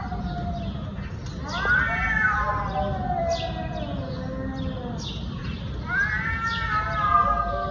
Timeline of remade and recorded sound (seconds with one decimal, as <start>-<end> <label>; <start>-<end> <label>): 0.0-7.7 recorded